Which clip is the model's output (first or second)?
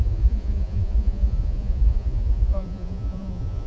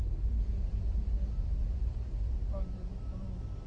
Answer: first